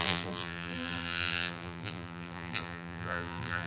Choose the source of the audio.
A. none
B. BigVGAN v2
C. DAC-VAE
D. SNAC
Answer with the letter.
B